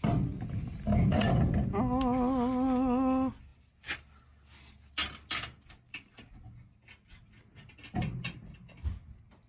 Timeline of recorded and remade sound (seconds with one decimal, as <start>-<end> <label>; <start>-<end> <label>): 0.0-9.5 recorded